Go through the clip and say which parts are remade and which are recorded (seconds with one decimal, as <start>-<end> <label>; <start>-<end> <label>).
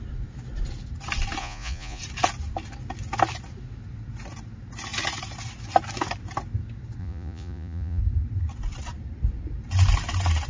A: 0.0-1.4 recorded; 1.4-2.0 remade; 2.0-7.0 recorded; 7.0-8.0 remade; 8.0-10.5 recorded